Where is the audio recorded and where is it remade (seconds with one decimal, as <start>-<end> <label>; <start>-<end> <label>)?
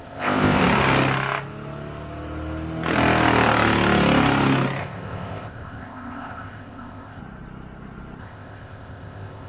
0.0-0.6 remade; 0.6-4.8 recorded; 4.8-7.2 remade; 7.2-8.2 recorded; 8.2-9.5 remade